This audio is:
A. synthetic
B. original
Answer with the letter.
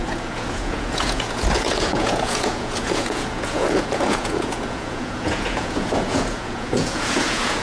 A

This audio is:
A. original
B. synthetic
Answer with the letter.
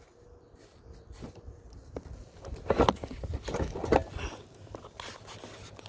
A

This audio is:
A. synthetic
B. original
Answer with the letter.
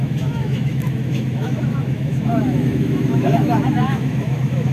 A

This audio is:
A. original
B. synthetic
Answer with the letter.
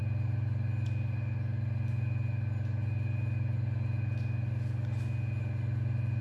A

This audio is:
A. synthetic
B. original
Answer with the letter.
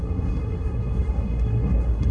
A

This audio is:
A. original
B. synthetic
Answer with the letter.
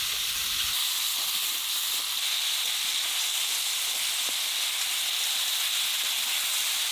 A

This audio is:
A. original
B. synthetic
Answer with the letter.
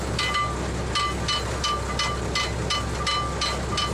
A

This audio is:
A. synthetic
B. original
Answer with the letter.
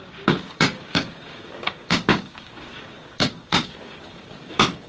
A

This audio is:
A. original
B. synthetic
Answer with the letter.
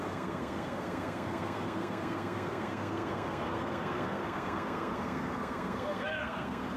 B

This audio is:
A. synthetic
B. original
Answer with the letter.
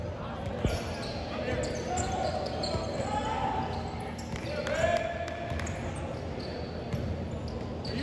B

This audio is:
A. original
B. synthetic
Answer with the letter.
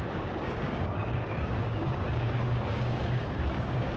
B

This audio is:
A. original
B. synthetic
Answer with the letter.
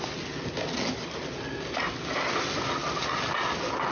A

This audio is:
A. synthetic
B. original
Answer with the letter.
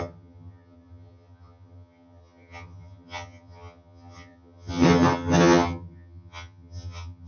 A